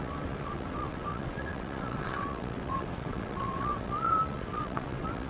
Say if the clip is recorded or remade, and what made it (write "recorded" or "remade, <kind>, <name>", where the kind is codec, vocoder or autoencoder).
remade, vocoder, WaveNeXt